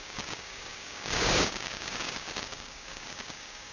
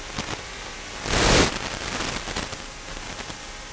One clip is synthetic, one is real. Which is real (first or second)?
second